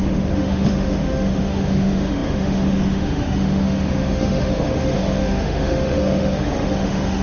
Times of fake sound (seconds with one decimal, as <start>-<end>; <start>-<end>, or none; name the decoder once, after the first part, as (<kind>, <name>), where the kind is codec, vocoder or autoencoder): 0.0-7.2 (autoencoder, DAC-VAE)